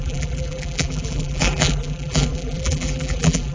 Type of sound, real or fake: fake